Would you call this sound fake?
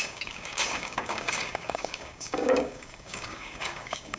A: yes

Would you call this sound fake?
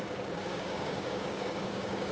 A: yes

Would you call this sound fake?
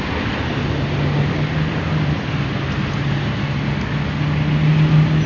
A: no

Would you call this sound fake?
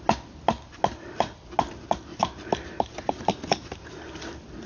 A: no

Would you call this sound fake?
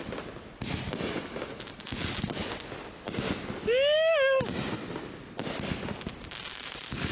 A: no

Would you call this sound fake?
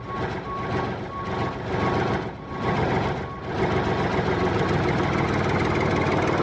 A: no